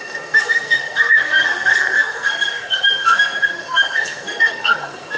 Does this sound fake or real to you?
fake